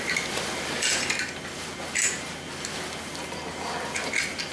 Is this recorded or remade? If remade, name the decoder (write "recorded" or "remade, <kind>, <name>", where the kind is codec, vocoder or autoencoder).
recorded